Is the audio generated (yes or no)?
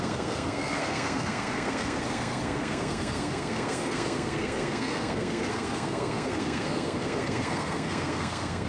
yes